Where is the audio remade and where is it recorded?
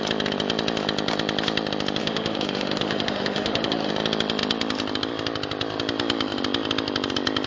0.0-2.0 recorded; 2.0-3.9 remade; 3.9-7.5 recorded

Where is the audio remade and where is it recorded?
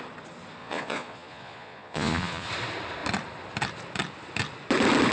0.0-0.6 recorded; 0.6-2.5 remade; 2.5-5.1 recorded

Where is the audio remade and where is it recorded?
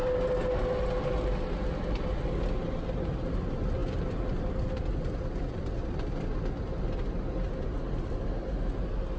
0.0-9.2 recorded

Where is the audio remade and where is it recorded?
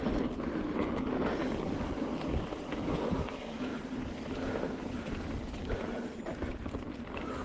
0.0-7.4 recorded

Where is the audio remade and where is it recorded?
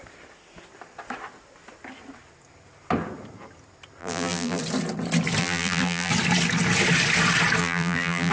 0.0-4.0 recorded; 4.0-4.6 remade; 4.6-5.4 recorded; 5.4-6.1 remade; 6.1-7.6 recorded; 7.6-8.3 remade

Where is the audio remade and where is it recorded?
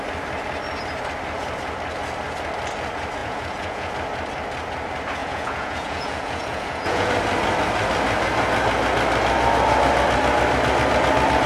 0.0-3.2 recorded; 3.2-3.9 remade; 3.9-5.2 recorded; 5.2-7.1 remade; 7.1-11.5 recorded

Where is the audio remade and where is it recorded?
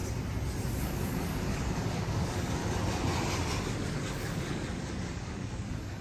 0.0-0.8 recorded; 0.8-2.6 remade; 2.6-3.7 recorded; 3.7-6.0 remade